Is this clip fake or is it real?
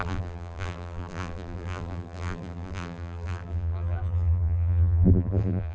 fake